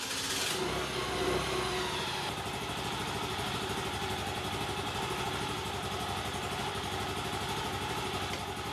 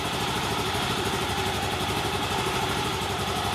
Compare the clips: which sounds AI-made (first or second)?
second